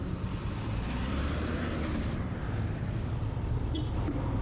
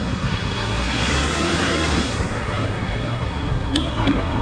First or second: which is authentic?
first